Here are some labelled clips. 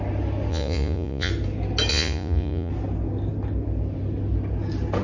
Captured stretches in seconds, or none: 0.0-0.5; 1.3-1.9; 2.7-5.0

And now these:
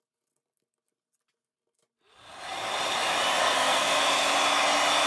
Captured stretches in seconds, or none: 0.0-3.4; 4.0-5.1

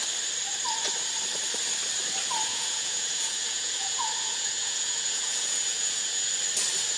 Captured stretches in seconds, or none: 0.0-2.5; 6.3-7.0

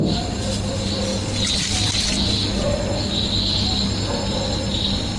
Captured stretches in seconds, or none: 0.0-5.2